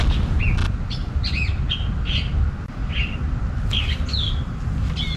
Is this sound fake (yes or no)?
no